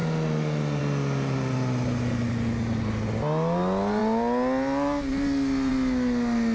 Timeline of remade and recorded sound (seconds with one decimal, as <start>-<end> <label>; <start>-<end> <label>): 0.0-6.5 recorded